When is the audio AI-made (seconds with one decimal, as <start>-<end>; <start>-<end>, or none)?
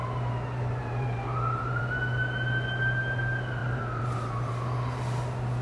0.0-1.8; 3.6-4.6